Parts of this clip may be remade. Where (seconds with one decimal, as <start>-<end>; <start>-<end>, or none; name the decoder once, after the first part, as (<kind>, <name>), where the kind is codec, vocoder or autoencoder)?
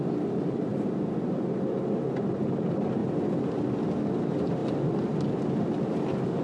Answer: none